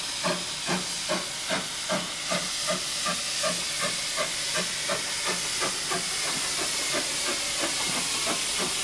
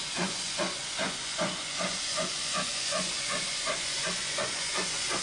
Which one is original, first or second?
first